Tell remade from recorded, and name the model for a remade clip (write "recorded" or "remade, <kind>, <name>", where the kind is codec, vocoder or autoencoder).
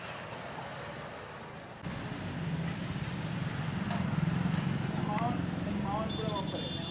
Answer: recorded